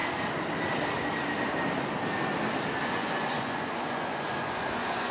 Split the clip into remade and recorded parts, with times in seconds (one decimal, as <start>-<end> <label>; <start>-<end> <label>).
0.0-2.8 recorded; 2.8-5.1 remade

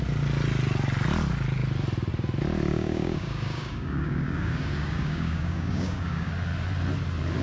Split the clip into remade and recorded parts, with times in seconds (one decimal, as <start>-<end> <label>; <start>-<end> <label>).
0.0-2.7 recorded; 2.7-6.3 remade; 6.3-7.4 recorded

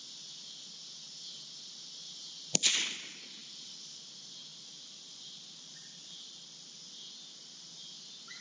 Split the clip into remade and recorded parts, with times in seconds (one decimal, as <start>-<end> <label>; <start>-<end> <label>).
0.0-3.4 recorded; 3.4-4.0 remade; 4.0-4.5 recorded; 4.5-6.9 remade; 6.9-8.4 recorded